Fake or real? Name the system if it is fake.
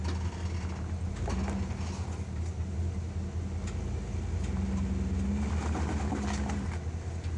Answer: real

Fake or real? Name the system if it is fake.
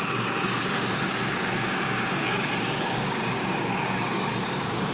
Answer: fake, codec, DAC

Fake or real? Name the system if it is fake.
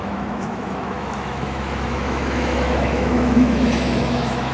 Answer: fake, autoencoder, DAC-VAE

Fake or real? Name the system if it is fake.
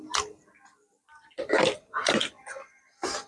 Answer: fake, vocoder, BigVGAN v2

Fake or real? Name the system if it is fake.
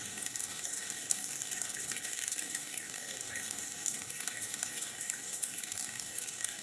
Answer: fake, codec, DAC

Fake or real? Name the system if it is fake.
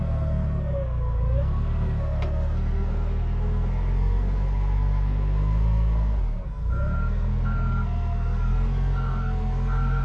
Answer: fake, codec, SNAC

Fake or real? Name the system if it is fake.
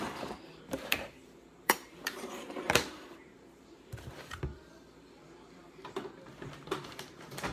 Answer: fake, vocoder, BigVGAN v2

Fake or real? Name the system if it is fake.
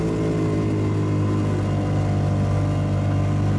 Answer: real